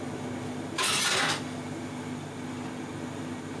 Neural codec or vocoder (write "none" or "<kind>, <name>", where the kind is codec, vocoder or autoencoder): none